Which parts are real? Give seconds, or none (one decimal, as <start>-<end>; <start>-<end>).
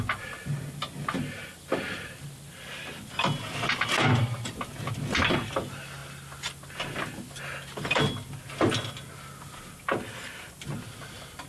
0.0-11.5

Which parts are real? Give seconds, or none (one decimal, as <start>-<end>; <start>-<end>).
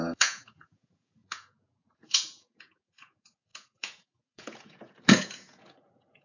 none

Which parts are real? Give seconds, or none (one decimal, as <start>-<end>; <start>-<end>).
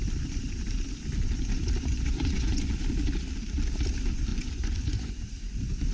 0.0-1.9; 2.5-4.3; 5.2-5.9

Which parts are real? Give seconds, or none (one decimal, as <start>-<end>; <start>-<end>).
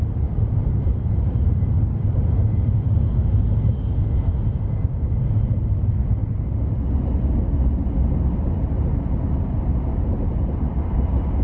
0.0-11.4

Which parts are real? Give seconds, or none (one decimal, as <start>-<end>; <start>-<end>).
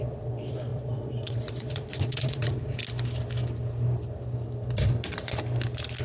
2.8-6.0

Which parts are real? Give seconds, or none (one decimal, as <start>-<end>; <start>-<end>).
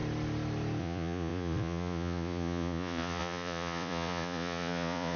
0.0-0.8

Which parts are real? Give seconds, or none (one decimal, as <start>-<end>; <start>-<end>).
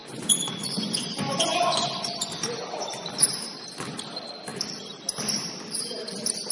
2.3-6.5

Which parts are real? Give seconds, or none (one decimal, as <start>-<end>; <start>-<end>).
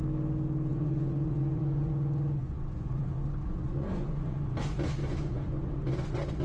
0.0-0.7; 1.9-2.4; 4.6-5.0; 5.6-6.4